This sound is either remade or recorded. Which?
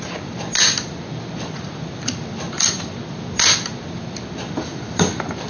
recorded